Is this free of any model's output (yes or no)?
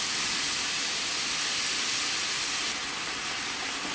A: yes